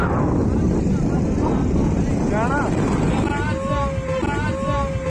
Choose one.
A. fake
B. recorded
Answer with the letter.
B